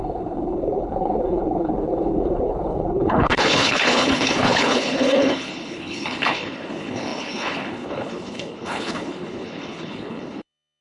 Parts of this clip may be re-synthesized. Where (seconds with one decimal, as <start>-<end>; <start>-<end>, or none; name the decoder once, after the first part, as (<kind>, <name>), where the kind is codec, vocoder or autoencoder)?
0.0-10.8 (codec, HILCodec)